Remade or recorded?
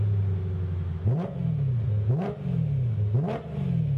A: recorded